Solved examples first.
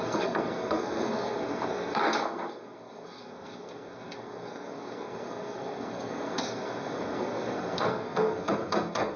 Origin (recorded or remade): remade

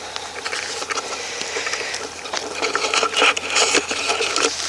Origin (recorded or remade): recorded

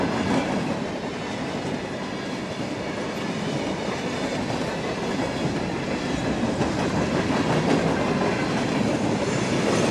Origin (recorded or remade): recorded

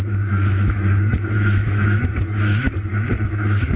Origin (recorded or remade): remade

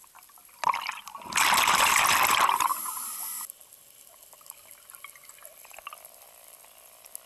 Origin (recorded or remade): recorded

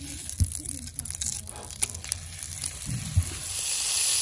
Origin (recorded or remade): recorded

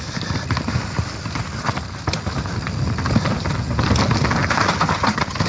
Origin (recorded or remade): recorded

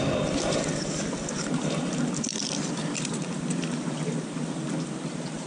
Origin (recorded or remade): recorded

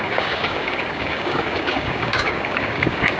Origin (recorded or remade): remade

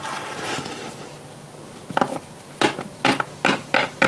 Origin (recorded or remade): recorded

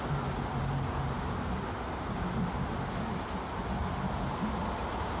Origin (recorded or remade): recorded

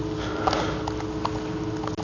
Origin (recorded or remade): recorded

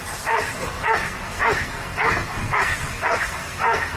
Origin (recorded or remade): remade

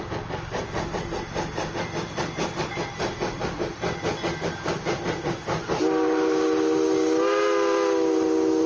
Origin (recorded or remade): recorded